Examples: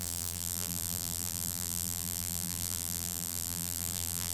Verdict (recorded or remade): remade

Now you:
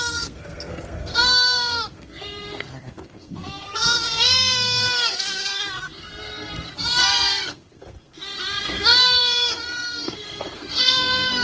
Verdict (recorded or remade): remade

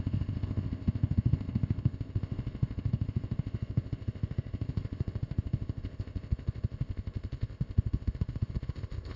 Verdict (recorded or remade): remade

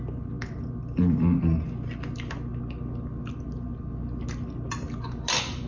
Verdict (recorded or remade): recorded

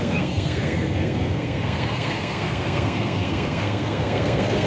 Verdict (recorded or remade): remade